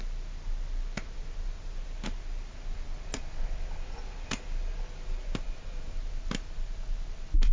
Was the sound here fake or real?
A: real